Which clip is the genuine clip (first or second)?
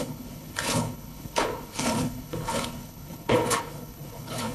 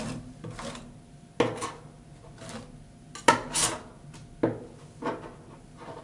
second